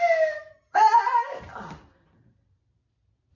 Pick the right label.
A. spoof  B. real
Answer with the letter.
B